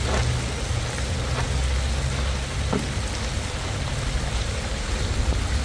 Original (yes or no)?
yes